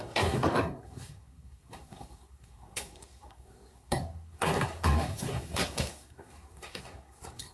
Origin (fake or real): fake